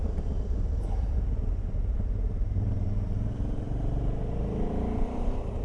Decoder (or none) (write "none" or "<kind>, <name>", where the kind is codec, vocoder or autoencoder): vocoder, BigVGAN v2